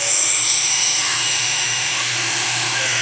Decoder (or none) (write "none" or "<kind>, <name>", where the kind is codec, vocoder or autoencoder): autoencoder, DAC-VAE